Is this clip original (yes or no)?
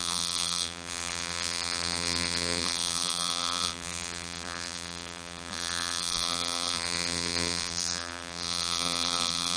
no